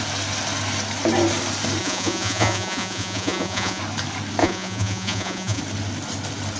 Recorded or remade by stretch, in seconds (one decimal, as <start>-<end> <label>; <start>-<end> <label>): 0.0-1.8 recorded; 1.8-3.8 remade; 3.8-4.4 recorded; 4.4-5.6 remade; 5.6-6.6 recorded